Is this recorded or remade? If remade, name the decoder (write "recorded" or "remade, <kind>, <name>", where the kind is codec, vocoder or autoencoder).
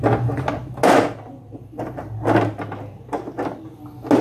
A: recorded